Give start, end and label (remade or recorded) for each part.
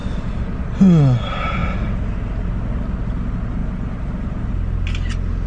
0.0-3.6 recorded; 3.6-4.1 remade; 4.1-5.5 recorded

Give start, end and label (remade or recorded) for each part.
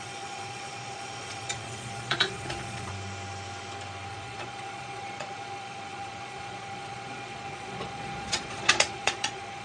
0.0-2.9 remade; 2.9-4.1 recorded; 4.1-9.6 remade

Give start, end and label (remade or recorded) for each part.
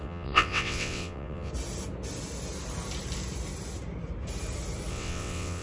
0.0-1.5 remade; 1.5-4.9 recorded; 4.9-5.6 remade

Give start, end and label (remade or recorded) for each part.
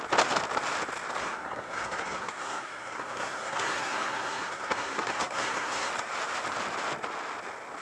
0.0-1.2 recorded; 1.2-5.9 remade; 5.9-7.8 recorded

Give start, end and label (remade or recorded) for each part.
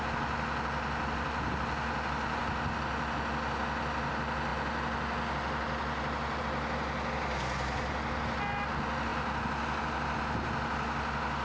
0.0-11.4 recorded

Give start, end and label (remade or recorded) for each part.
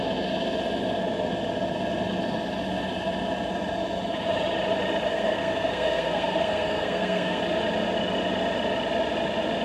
0.0-5.1 recorded; 5.1-7.4 remade; 7.4-9.6 recorded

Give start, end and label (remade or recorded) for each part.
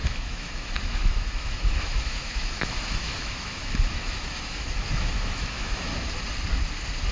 0.0-5.9 remade; 5.9-7.1 recorded